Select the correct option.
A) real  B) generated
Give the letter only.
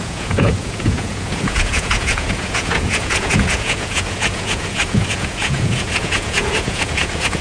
B